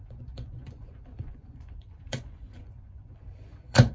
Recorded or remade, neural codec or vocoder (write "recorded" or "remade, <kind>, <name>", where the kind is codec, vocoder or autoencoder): remade, vocoder, Vocos